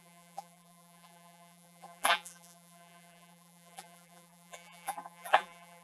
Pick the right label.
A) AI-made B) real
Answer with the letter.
A